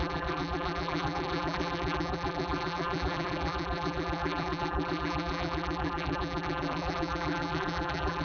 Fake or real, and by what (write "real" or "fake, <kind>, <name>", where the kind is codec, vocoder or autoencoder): fake, vocoder, BigVGAN v2